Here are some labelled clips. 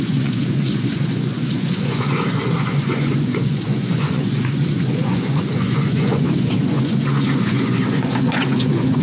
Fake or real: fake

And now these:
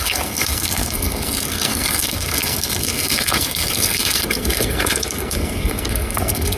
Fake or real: fake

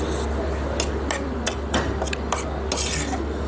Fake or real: real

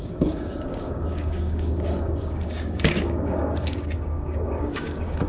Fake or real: fake